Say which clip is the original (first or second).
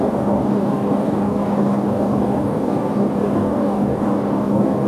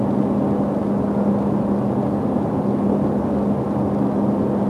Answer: second